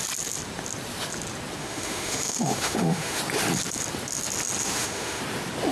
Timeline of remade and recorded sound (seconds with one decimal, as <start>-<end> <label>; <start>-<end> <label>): 0.0-1.6 recorded; 1.6-3.2 remade; 3.2-4.6 recorded; 4.6-5.2 remade; 5.2-5.7 recorded